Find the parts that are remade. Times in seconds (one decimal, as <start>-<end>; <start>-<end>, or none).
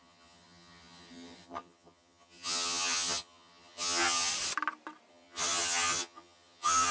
0.0-4.3; 5.1-6.9